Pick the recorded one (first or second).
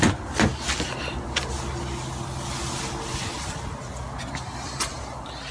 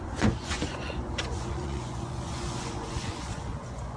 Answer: first